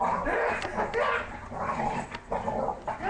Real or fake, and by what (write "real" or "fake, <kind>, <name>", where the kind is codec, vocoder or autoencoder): real